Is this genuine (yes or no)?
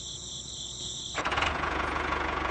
no